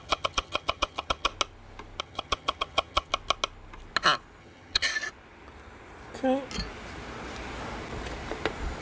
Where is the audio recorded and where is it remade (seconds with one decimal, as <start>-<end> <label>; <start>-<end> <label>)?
0.0-1.3 remade; 1.3-2.0 recorded; 2.0-3.1 remade; 3.1-4.4 recorded; 4.4-4.9 remade; 4.9-8.8 recorded